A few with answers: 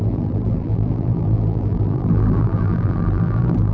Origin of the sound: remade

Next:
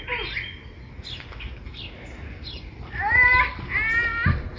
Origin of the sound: recorded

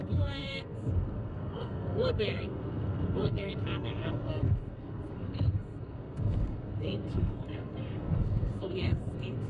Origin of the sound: remade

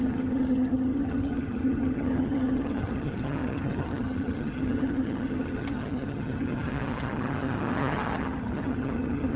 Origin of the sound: remade